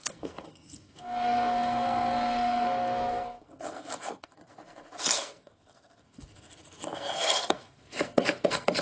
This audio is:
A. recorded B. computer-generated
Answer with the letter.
B